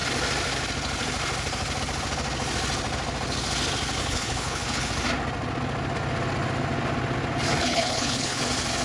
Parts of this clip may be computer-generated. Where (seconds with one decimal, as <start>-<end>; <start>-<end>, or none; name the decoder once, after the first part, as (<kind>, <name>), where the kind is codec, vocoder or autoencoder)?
4.0-4.9 (codec, HILCodec); 7.5-8.4